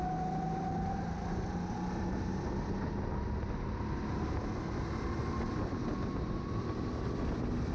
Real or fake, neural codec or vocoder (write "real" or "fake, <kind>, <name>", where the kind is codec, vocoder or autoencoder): real